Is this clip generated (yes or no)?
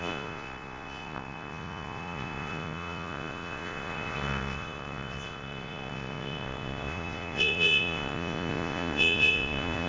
yes